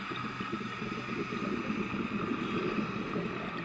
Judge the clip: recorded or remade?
recorded